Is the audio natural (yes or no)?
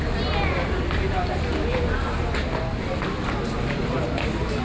yes